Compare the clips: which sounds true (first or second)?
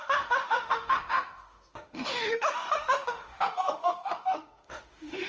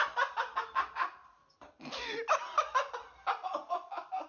second